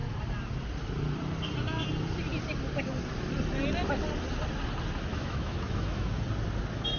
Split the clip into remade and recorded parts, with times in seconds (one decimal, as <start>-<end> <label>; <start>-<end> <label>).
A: 0.0-5.1 recorded; 5.1-6.2 remade; 6.2-7.0 recorded